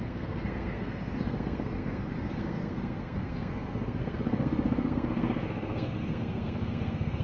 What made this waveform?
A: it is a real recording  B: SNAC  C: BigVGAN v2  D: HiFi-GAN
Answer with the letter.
B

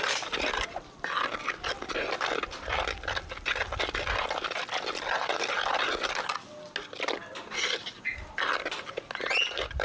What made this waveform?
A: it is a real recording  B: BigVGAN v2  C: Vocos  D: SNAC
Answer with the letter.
A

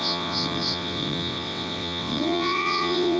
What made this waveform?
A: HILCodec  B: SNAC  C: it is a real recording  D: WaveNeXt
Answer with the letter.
D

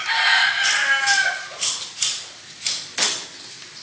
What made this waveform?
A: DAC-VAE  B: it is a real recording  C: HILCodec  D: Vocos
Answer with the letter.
B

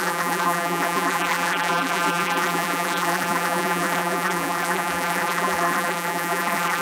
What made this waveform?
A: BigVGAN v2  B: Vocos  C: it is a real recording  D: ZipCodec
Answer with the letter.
A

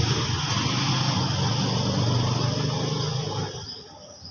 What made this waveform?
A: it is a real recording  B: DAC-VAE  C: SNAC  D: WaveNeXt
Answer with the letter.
A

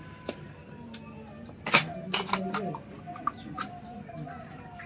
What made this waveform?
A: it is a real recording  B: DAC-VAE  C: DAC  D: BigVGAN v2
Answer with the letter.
A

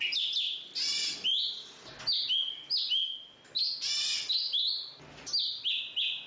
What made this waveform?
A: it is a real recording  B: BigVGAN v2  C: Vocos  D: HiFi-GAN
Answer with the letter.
A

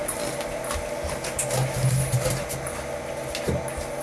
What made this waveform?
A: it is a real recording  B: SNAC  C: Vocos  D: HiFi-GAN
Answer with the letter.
A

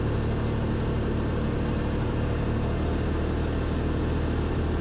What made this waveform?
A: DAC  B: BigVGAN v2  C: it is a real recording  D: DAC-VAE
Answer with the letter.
C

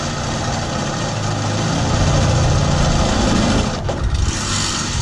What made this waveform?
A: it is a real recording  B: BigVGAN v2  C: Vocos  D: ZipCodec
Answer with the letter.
A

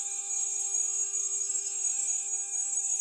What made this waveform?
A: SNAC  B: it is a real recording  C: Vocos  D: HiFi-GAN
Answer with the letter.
A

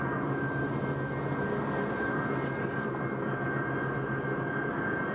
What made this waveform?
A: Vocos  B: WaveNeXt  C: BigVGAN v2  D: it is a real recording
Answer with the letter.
D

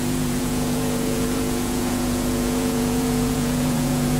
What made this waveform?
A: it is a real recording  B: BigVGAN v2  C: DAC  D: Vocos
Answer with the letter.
D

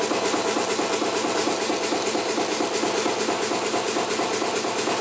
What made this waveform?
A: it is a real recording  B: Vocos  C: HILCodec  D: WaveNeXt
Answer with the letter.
A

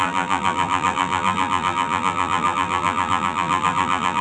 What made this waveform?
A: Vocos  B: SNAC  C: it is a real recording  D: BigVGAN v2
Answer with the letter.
D